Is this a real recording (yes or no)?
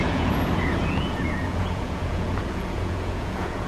no